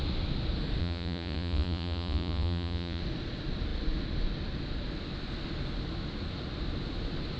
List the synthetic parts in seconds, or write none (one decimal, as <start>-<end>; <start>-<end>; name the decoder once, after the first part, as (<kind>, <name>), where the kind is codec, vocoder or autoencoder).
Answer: 0.8-3.0 (vocoder, Vocos)